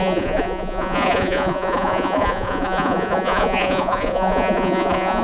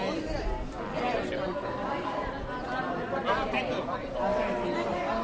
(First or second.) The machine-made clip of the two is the first